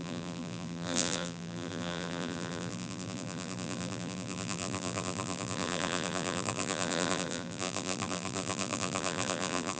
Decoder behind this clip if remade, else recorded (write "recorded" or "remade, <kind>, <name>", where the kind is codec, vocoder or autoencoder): remade, vocoder, BigVGAN v2